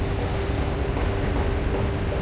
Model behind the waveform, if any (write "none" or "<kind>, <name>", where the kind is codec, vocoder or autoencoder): none